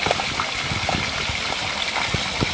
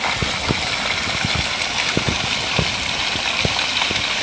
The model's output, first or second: first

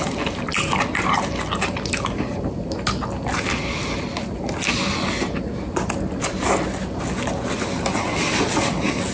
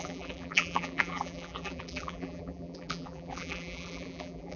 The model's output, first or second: second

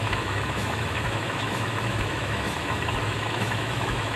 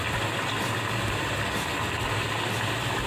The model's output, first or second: first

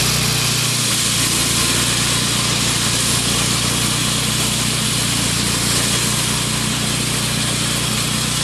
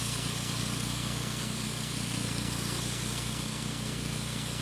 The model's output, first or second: second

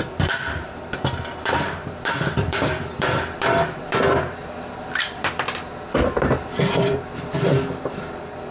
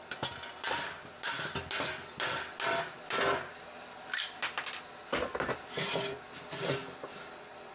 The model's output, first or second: first